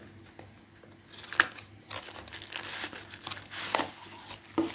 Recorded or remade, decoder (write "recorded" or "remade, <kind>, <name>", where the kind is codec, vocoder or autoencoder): recorded